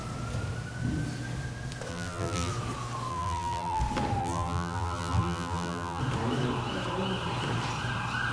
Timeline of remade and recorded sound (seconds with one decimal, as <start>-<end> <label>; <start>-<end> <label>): 0.0-1.9 recorded; 1.9-2.5 remade; 2.5-3.1 recorded; 3.1-3.8 remade; 3.8-4.2 recorded; 4.2-6.0 remade; 6.0-8.3 recorded